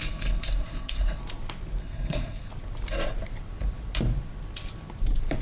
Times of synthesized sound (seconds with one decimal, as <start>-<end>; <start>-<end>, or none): 0.0-1.2; 1.8-2.5